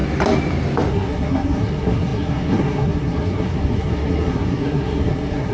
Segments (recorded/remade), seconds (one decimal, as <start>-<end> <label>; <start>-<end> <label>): 0.0-0.9 recorded; 0.9-5.5 remade